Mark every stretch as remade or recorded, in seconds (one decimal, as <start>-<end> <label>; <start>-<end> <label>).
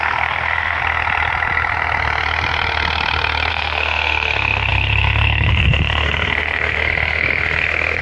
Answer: 0.0-0.8 remade; 0.8-3.5 recorded; 3.5-8.0 remade